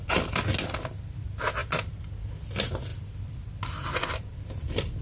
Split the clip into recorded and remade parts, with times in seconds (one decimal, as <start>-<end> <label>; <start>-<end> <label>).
0.0-5.0 recorded